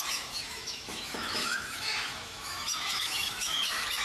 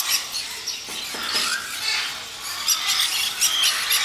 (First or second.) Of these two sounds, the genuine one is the second